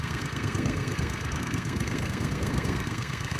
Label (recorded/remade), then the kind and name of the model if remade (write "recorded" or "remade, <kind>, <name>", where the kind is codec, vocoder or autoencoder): remade, codec, SNAC